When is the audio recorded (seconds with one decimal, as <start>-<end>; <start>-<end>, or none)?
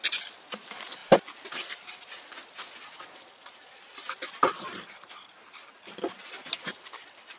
0.0-1.0; 5.4-7.4